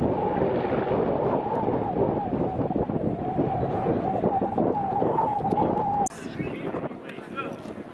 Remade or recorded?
recorded